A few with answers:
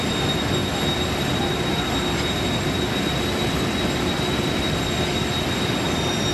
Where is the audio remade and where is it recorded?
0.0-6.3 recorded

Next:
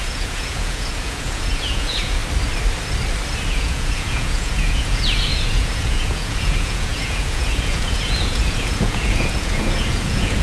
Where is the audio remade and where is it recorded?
0.0-2.2 remade; 2.2-3.5 recorded; 3.5-10.4 remade

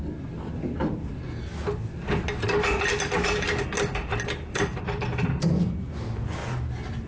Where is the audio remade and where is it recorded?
0.0-7.1 recorded

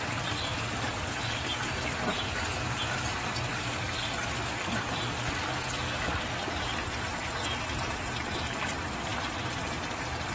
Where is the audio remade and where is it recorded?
0.0-10.3 recorded

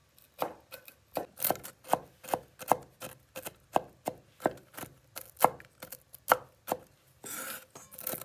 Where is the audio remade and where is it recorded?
0.0-8.2 recorded